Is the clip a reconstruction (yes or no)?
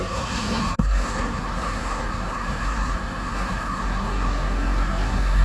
yes